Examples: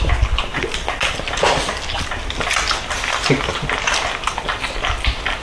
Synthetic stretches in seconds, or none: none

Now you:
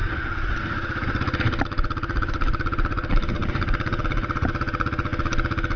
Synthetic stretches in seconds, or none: 0.0-5.1 (vocoder, BigVGAN v2)

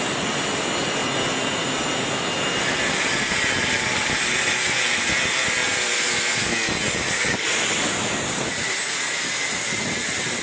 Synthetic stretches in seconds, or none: none

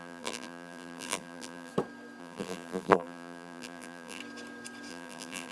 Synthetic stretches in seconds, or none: 0.0-1.7 (vocoder, BigVGAN v2); 2.2-4.2; 4.9-5.5

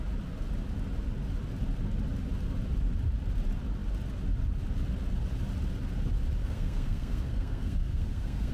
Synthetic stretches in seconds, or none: 6.4-8.5 (codec, SNAC)

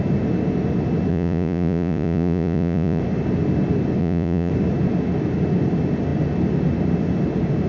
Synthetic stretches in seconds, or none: 1.1-3.0 (vocoder, Vocos); 4.0-4.5

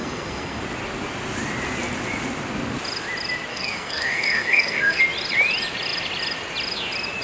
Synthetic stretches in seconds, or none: 0.0-0.6 (codec, SNAC); 3.5-5.0

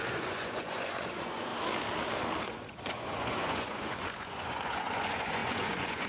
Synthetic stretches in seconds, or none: 0.0-1.5 (vocoder, Vocos); 2.4-6.1